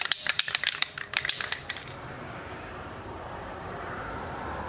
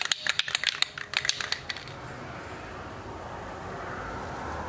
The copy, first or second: first